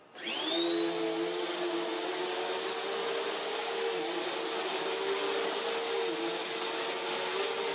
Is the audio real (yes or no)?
yes